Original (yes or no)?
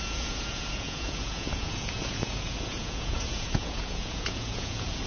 no